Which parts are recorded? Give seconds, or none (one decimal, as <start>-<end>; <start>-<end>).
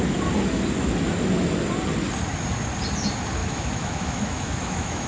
0.0-3.4